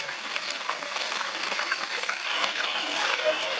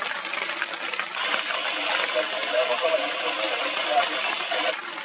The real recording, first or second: second